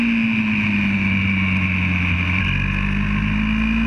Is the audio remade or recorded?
recorded